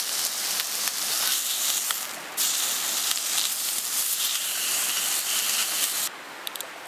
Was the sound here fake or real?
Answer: real